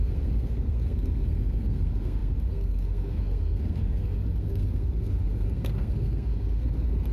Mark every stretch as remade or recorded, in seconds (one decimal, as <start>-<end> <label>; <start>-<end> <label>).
0.0-7.1 remade